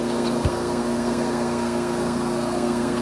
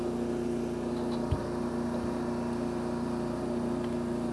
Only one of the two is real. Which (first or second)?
second